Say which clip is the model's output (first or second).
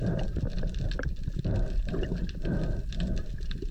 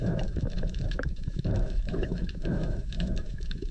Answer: second